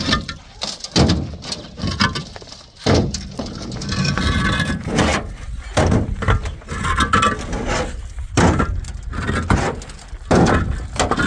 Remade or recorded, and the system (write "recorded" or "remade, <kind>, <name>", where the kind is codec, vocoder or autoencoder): recorded